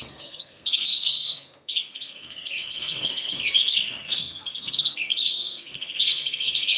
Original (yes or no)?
no